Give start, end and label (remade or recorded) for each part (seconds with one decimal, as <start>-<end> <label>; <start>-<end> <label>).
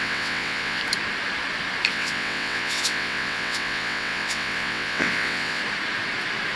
0.0-0.8 remade; 0.8-1.9 recorded; 1.9-5.6 remade; 5.6-6.6 recorded